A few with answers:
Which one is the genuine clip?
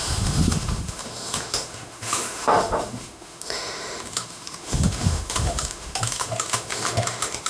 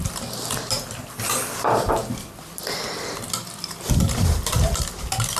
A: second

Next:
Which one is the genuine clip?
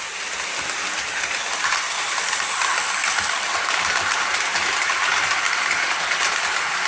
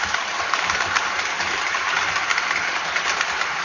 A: first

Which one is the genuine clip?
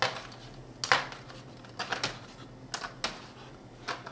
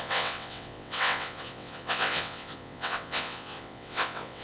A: first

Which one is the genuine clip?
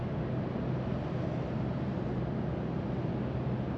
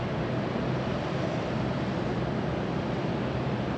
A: first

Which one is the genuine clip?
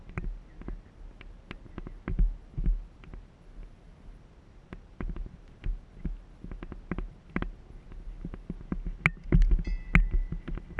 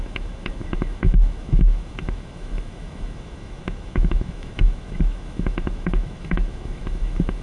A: first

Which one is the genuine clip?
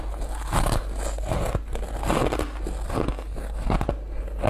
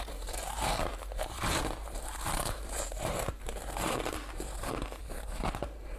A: first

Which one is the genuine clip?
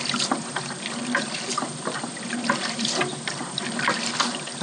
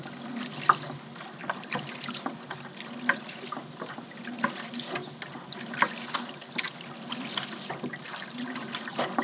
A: second